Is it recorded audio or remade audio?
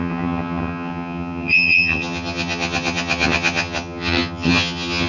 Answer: remade